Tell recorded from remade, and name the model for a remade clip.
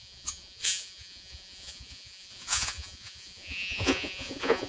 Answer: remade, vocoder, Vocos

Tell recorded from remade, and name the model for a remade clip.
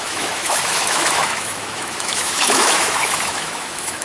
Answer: remade, autoencoder, DAC-VAE